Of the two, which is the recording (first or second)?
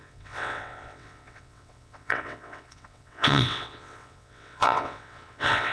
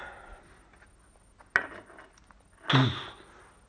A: second